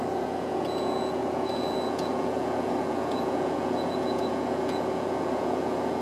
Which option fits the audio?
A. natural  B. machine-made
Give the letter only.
B